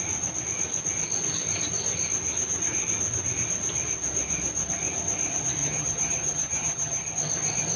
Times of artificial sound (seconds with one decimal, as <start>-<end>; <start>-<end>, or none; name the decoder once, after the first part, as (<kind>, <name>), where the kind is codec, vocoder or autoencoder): 5.6-7.1 (vocoder, HiFi-GAN)